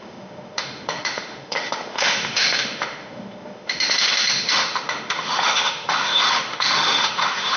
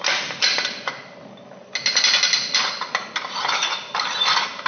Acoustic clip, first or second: second